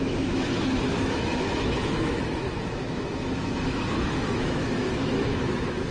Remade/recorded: remade